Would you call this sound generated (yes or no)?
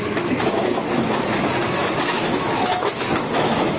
yes